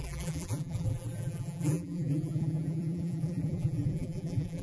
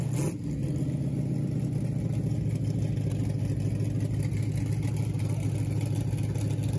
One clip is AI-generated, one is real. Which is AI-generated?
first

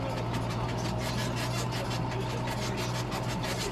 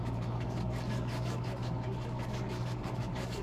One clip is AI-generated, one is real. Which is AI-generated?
second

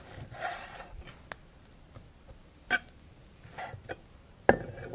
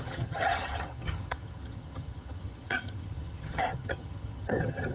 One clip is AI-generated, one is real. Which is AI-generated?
second